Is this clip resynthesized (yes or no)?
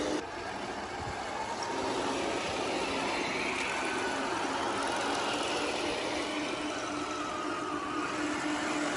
no